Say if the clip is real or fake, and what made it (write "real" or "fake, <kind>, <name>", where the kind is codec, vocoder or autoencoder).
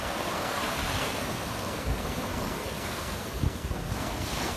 fake, codec, SNAC